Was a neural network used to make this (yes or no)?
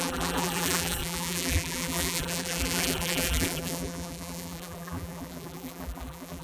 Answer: yes